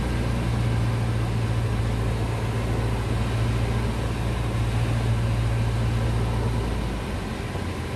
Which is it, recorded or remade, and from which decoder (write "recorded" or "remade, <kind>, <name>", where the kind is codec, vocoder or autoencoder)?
recorded